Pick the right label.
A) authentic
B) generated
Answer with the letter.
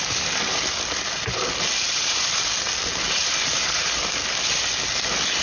B